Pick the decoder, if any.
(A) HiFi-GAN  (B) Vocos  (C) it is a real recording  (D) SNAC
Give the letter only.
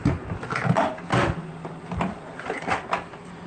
C